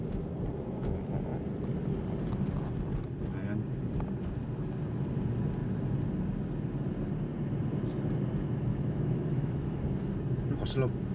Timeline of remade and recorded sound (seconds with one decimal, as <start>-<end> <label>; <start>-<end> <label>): 0.0-8.7 recorded; 8.7-9.8 remade; 9.8-11.1 recorded